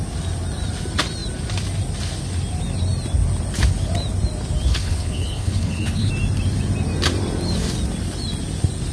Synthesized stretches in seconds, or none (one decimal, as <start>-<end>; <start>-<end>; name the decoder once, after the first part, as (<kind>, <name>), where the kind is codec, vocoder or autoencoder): 4.7-6.1 (codec, HILCodec)